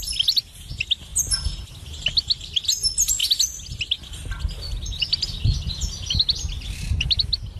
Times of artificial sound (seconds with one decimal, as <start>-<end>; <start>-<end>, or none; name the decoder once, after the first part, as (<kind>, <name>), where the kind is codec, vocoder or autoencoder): none